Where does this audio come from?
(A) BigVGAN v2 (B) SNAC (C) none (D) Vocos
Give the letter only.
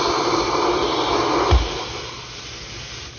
C